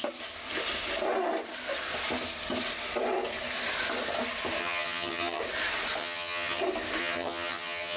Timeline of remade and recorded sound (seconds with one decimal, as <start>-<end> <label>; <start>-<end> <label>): 0.0-4.6 recorded; 4.6-5.4 remade; 5.4-6.0 recorded; 6.0-6.6 remade; 6.6-7.0 recorded; 7.0-8.0 remade